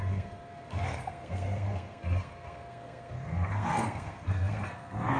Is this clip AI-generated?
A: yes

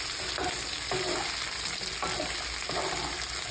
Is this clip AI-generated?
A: no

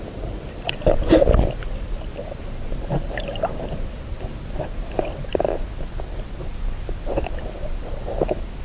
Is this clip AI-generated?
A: no